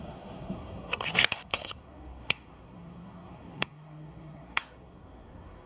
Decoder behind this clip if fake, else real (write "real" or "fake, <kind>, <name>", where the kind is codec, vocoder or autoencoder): fake, codec, SNAC